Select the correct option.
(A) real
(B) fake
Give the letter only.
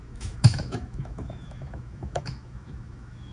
B